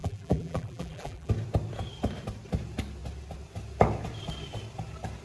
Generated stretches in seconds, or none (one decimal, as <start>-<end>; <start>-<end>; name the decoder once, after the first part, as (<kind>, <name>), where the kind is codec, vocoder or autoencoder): 0.0-1.3 (vocoder, BigVGAN v2)